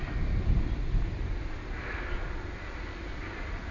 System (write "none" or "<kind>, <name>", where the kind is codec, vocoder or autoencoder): none